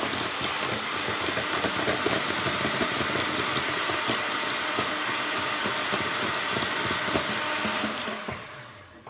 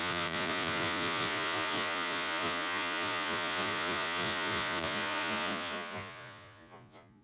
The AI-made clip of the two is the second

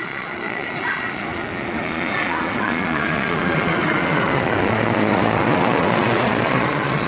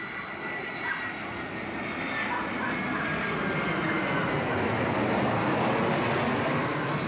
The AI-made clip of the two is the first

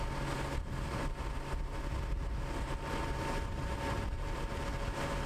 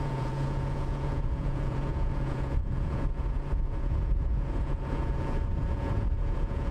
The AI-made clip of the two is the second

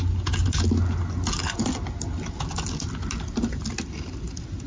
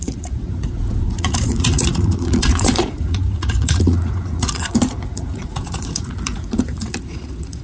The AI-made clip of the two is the second